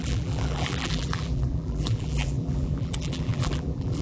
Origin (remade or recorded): remade